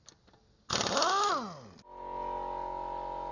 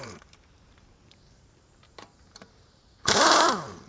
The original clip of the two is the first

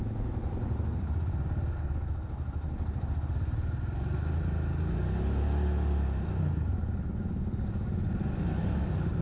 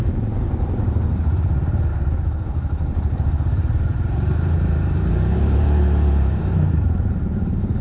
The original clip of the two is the first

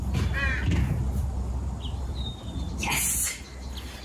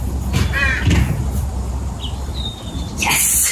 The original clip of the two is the first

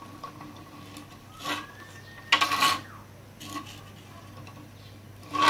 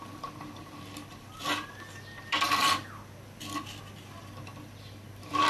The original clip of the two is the first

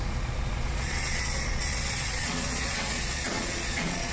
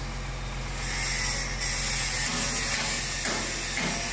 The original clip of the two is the second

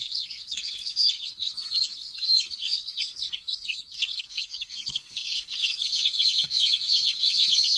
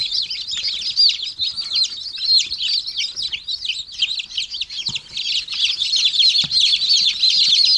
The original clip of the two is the second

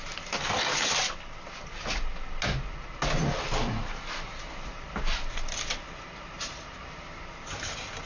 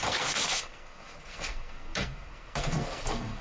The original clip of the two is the first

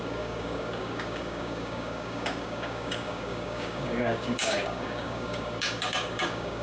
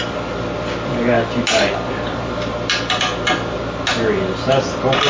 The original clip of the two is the second